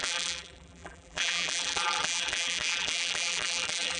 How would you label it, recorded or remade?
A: remade